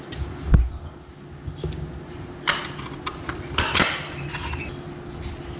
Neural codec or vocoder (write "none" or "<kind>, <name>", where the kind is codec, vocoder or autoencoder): none